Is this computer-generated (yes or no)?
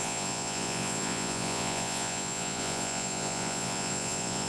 yes